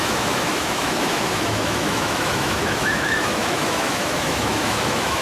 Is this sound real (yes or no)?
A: no